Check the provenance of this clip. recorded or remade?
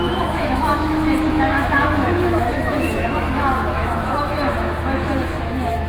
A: remade